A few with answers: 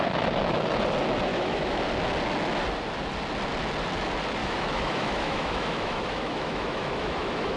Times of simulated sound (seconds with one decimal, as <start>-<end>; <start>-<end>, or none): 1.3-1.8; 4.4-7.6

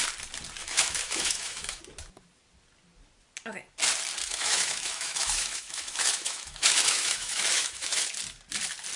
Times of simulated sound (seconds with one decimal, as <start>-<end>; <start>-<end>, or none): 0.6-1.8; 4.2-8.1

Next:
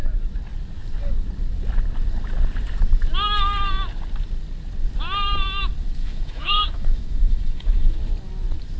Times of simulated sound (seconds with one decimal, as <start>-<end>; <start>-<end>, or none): 6.0-8.0

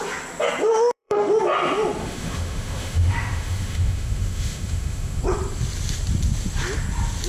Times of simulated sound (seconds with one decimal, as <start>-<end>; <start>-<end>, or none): 0.7-1.3; 2.0-5.2

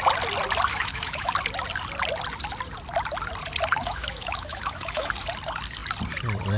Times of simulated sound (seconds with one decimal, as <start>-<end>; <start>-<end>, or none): 0.7-1.3; 3.8-5.1